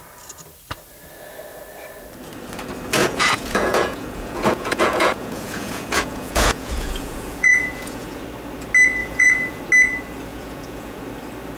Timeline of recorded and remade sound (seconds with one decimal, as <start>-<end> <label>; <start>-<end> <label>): 0.0-3.0 recorded; 3.0-8.2 remade; 8.2-9.0 recorded; 9.0-9.6 remade; 9.6-10.3 recorded; 10.3-11.0 remade; 11.0-11.6 recorded